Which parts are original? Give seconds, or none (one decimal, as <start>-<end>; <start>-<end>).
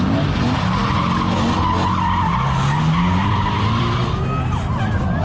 0.0-3.2; 4.2-5.2